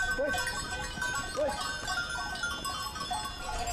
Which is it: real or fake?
real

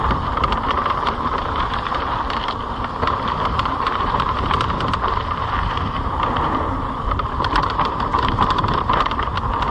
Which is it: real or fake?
fake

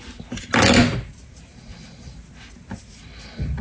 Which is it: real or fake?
real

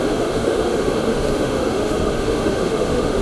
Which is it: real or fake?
fake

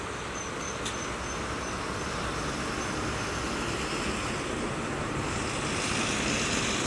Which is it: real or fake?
real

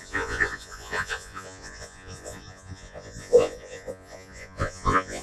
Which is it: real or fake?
fake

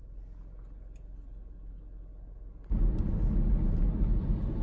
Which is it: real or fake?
real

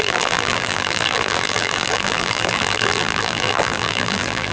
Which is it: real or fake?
fake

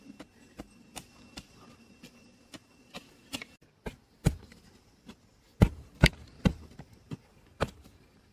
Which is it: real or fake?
real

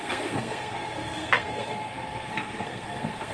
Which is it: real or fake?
fake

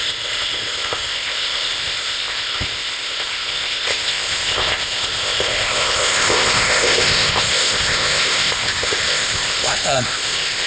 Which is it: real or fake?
fake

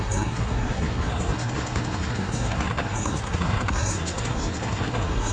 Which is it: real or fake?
fake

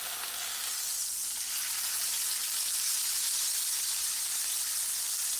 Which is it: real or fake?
real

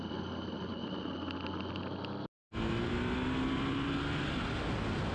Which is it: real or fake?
real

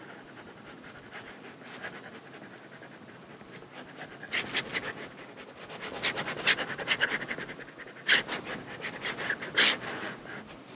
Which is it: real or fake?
real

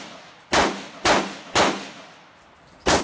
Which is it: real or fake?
real